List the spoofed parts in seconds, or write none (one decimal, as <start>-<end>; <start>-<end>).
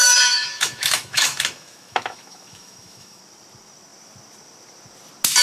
0.0-3.2